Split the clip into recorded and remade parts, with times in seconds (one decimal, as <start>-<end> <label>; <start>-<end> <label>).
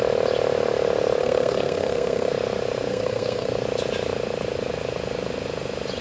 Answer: 0.0-1.2 recorded; 1.2-2.3 remade; 2.3-2.9 recorded; 2.9-3.5 remade; 3.5-6.0 recorded